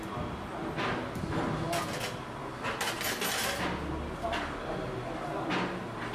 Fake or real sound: real